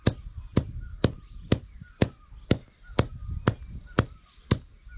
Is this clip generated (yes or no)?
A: no